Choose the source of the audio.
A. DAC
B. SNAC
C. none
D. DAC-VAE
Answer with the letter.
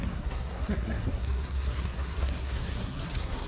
B